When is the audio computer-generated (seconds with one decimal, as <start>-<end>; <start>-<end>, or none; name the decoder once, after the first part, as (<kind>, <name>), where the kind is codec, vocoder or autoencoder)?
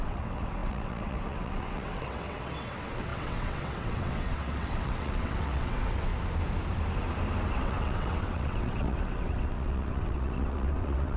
0.0-6.1 (vocoder, WaveNeXt); 7.5-11.2